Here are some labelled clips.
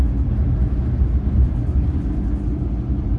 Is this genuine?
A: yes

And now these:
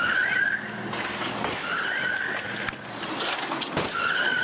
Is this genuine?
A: yes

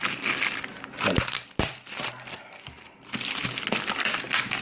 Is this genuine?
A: yes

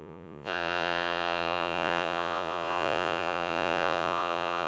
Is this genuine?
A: no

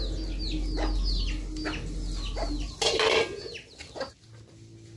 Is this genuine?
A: yes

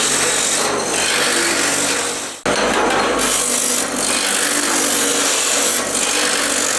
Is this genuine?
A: yes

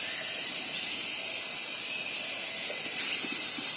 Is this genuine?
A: yes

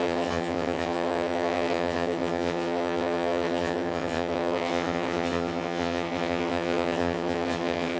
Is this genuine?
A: no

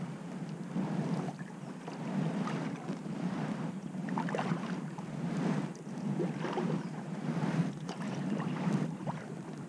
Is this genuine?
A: no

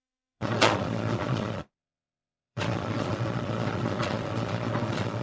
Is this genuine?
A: no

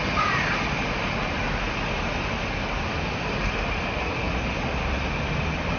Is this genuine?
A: yes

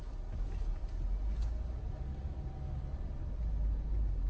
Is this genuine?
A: yes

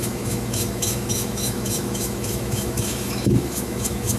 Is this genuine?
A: no